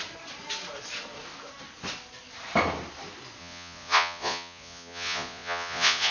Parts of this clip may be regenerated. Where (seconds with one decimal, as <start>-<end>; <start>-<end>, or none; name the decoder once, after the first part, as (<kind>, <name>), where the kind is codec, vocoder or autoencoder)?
3.4-6.1 (vocoder, Vocos)